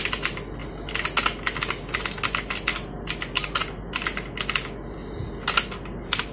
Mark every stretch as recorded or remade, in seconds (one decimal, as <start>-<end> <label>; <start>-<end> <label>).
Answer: 0.0-6.3 recorded